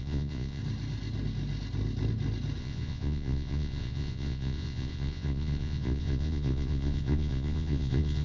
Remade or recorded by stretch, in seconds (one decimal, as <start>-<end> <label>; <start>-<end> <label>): 0.0-0.6 remade; 0.6-2.6 recorded; 2.6-8.2 remade